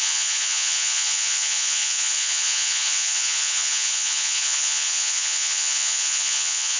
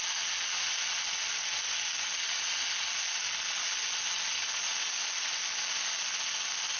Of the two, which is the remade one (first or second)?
first